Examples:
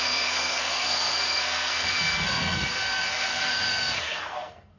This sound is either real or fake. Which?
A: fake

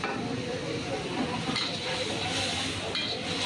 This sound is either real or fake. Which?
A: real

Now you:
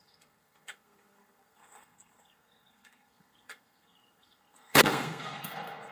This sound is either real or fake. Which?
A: fake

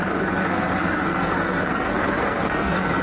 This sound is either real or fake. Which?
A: fake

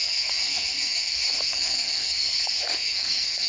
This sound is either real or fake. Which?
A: fake